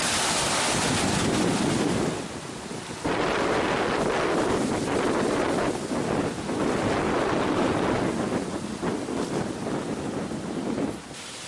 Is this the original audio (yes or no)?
yes